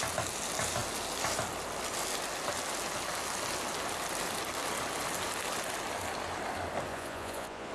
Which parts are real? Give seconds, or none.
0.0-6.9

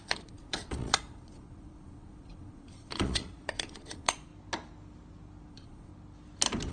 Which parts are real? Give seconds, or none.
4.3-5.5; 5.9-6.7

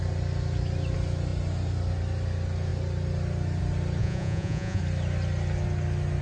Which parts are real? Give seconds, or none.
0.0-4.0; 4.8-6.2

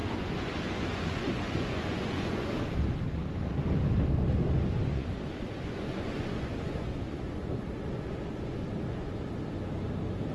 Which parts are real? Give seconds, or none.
2.5-4.9; 9.4-10.3

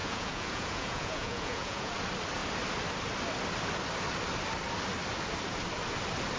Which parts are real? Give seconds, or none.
1.9-6.4